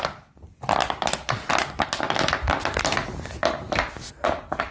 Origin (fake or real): real